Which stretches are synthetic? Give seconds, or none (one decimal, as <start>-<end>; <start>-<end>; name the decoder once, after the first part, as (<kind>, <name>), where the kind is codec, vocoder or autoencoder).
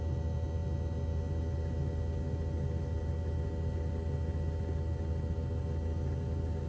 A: none